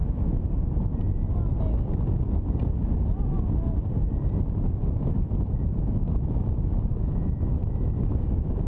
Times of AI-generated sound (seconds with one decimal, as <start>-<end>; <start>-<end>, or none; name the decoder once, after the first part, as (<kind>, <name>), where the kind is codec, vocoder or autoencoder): 4.8-8.7 (autoencoder, DAC-VAE)